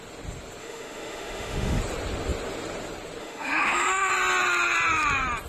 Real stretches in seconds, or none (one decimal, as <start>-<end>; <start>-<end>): 0.0-0.6; 1.8-3.2; 4.1-5.5